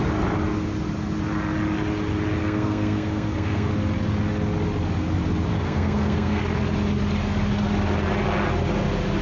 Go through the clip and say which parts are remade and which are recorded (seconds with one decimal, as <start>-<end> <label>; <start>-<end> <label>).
0.0-2.4 recorded; 2.4-3.7 remade; 3.7-5.5 recorded; 5.5-6.4 remade; 6.4-9.2 recorded